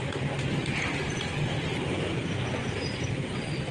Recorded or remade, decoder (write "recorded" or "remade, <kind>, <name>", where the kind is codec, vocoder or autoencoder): recorded